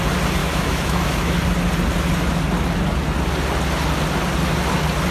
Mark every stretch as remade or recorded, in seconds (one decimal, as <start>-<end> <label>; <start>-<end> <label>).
0.0-0.4 recorded; 0.4-1.4 remade; 1.4-5.1 recorded

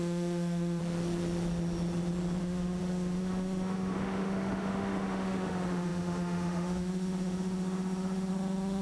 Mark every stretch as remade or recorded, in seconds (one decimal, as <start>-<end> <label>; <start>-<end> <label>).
0.0-0.8 remade; 0.8-2.4 recorded; 2.4-8.8 remade

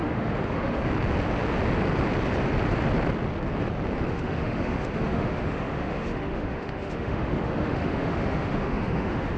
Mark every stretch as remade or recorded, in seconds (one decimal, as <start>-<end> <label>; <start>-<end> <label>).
0.0-0.8 remade; 0.8-4.1 recorded; 4.1-9.4 remade

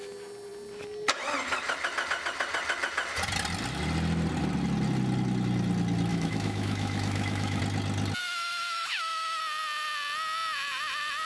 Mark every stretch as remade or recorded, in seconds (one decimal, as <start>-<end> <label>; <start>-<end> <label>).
0.0-6.1 recorded; 6.1-7.6 remade; 7.6-8.2 recorded; 8.2-9.4 remade; 9.4-11.3 recorded

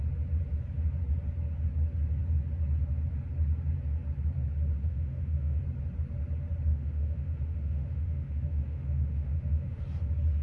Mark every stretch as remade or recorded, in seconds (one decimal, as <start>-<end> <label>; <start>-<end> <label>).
0.0-4.8 recorded; 4.8-5.6 remade; 5.6-6.7 recorded; 6.7-9.8 remade; 9.8-10.4 recorded

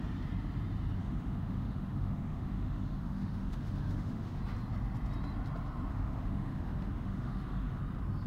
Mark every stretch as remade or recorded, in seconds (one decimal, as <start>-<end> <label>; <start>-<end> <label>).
0.0-1.0 recorded; 1.0-4.4 remade; 4.4-5.9 recorded; 5.9-7.8 remade; 7.8-8.3 recorded

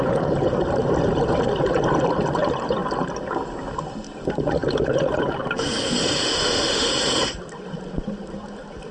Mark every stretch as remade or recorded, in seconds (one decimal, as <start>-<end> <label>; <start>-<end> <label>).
0.0-6.2 recorded; 6.2-6.9 remade; 6.9-8.9 recorded

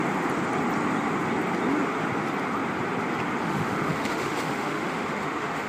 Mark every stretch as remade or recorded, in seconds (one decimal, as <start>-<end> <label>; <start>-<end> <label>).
0.0-3.4 recorded; 3.4-5.7 remade